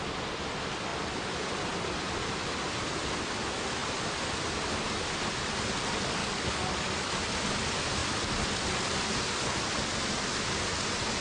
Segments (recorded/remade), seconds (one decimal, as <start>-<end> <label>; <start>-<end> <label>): 0.0-6.2 recorded; 6.2-7.1 remade; 7.1-11.2 recorded